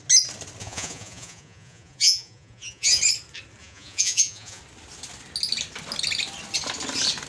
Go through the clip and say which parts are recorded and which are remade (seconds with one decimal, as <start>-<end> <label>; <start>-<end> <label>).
0.0-0.6 recorded; 0.6-3.0 remade; 3.0-3.6 recorded; 3.6-4.6 remade; 4.6-7.3 recorded